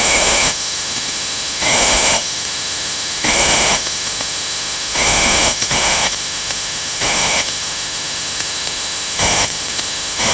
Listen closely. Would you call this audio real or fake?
fake